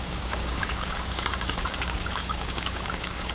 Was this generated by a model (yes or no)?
yes